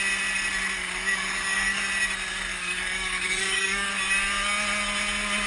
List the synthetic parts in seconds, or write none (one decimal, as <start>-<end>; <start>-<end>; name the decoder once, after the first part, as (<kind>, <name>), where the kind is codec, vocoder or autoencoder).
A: 0.8-1.8 (codec, DAC); 2.5-3.9